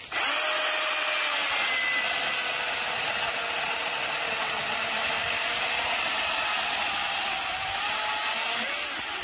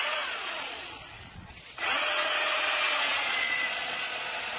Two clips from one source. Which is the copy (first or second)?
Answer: second